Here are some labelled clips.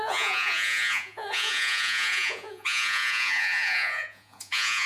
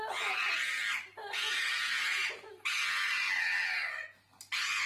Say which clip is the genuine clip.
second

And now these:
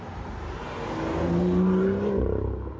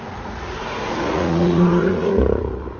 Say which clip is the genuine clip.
first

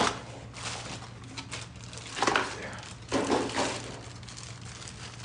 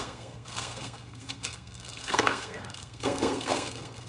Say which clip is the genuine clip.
first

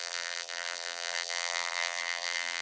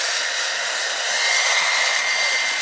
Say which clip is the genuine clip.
second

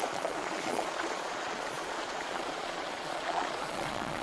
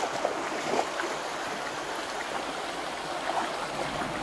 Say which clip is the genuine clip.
second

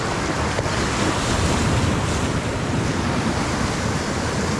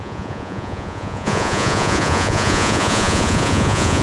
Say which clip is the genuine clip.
first